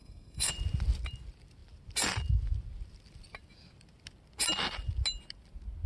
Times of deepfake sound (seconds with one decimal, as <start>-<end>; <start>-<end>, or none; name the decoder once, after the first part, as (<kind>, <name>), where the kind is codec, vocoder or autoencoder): 0.0-0.5 (codec, SNAC)